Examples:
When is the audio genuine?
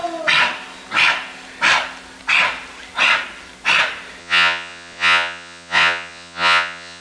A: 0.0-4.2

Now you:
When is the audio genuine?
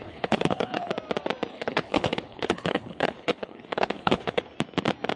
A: 0.9-1.5; 4.4-5.2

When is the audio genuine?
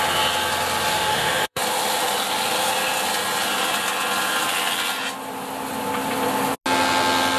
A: 0.0-0.9; 1.6-7.4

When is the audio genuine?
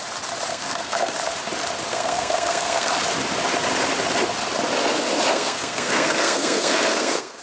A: 0.0-0.5; 1.1-1.9; 2.9-5.3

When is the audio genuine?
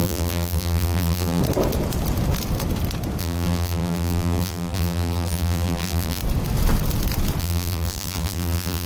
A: 1.4-3.2; 6.2-7.4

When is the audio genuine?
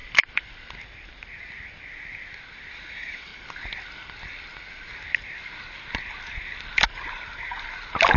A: 0.0-2.7; 3.3-8.2